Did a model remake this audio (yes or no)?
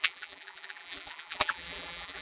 yes